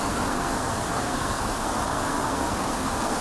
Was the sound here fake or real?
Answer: fake